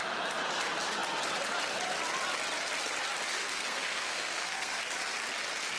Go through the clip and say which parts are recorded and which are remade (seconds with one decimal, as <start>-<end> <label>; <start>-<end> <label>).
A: 0.0-3.4 recorded; 3.4-4.8 remade; 4.8-5.8 recorded